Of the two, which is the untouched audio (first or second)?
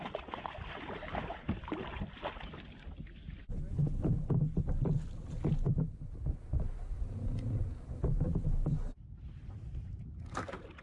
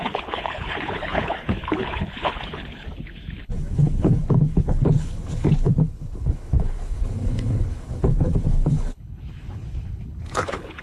first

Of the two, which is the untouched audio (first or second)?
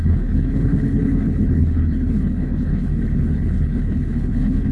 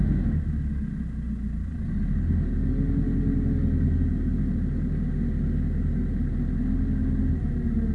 second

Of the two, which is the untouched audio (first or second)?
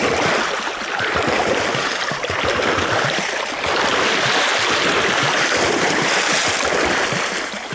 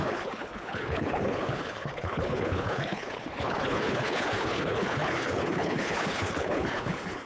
first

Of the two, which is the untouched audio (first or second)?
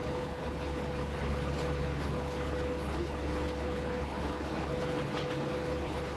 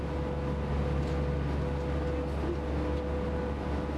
second